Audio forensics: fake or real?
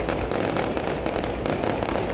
real